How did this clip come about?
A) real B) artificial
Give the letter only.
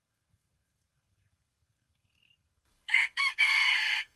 B